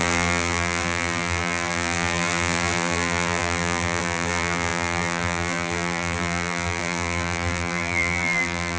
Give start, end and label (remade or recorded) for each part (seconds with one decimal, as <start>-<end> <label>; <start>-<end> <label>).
0.0-8.8 remade